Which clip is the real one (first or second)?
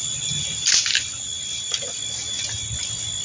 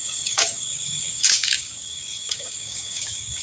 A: first